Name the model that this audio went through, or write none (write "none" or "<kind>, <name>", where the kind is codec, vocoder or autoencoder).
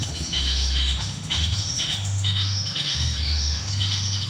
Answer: autoencoder, DAC-VAE